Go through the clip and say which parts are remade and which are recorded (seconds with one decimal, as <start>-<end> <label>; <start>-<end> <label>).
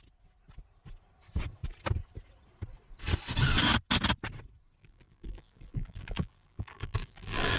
0.0-4.8 recorded; 4.8-7.6 remade